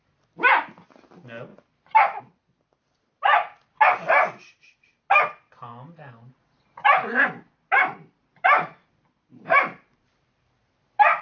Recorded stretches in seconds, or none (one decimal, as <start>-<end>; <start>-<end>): 0.0-1.5; 2.2-5.7; 7.7-8.2; 10.6-11.2